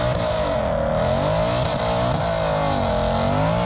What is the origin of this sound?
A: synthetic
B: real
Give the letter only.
B